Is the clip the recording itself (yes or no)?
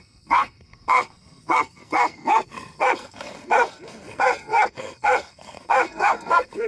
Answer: no